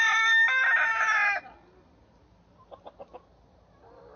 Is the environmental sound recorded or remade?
recorded